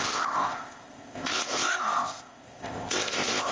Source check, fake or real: fake